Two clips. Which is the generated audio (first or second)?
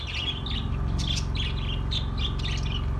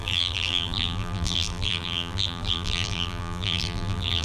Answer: second